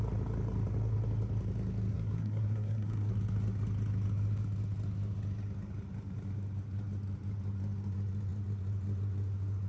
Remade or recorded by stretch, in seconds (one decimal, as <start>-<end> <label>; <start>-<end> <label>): 0.0-1.9 recorded; 1.9-3.1 remade; 3.1-9.7 recorded